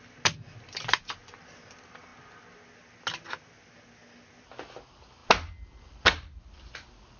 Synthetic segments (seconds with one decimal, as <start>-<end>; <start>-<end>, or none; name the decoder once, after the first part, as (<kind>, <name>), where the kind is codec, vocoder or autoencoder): none